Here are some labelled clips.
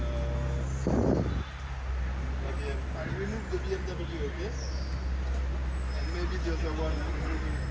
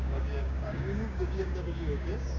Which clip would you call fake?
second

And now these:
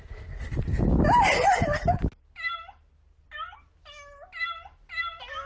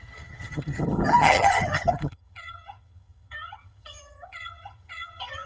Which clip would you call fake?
second